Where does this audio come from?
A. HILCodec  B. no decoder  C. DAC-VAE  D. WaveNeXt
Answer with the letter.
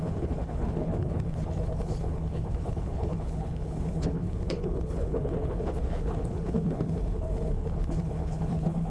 A